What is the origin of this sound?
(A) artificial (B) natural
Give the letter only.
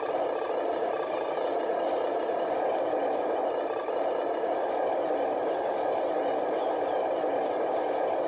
B